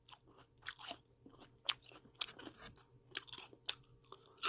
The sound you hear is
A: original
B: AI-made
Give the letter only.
A